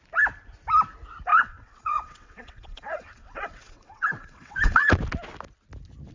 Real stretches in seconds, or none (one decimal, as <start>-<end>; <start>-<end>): 0.0-1.3; 5.0-6.1